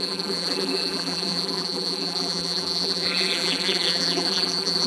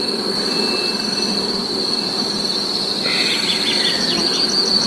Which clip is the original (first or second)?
second